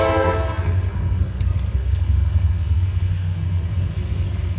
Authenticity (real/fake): fake